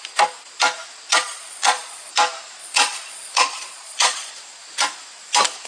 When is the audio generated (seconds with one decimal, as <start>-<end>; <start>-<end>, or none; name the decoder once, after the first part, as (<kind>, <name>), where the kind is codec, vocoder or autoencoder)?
1.1-2.1 (vocoder, Vocos); 2.6-4.3

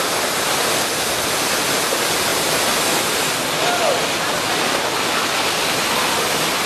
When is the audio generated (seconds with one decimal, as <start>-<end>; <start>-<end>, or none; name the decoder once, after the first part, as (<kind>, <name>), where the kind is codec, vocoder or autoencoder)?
none

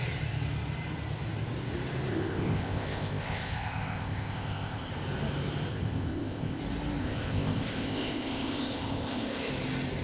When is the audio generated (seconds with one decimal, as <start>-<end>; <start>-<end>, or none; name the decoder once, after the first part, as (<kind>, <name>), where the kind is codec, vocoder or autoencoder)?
2.1-4.9 (codec, ZipCodec); 5.7-6.6; 7.0-9.5

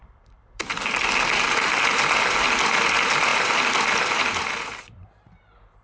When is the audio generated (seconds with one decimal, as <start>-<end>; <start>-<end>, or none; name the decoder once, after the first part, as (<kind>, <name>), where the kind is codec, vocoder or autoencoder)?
0.0-1.7 (vocoder, BigVGAN v2); 3.3-5.1

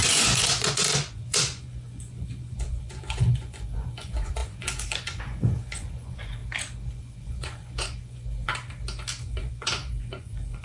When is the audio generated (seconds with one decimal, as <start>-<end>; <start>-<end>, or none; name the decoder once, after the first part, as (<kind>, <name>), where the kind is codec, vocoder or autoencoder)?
0.0-6.4 (vocoder, Vocos); 6.9-8.5; 9.2-10.6